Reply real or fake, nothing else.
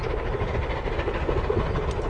real